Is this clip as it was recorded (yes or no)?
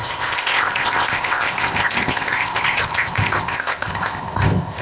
no